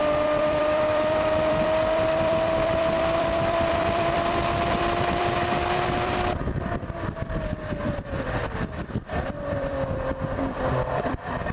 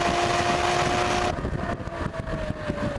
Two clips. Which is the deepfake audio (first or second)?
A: first